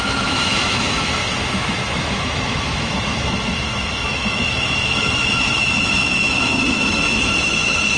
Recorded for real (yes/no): no